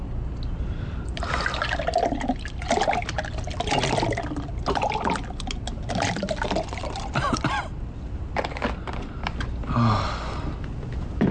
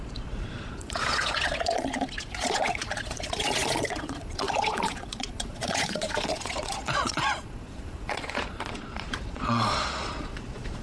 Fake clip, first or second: second